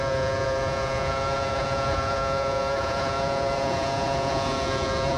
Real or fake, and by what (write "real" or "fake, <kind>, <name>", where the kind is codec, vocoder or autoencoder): fake, vocoder, Vocos